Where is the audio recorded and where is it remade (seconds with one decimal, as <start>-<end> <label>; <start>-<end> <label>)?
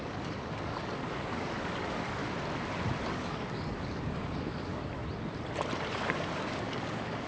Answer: 0.0-2.2 remade; 2.2-3.1 recorded; 3.1-5.0 remade; 5.0-5.9 recorded; 5.9-7.3 remade